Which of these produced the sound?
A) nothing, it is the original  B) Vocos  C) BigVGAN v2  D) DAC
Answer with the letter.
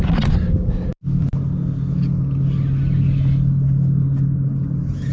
A